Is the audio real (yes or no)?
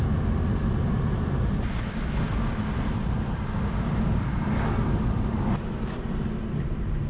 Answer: yes